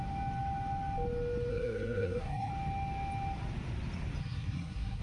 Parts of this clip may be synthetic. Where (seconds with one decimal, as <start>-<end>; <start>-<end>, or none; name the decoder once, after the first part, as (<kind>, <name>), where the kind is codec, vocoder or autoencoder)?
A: 1.5-2.5 (codec, SNAC); 4.2-5.0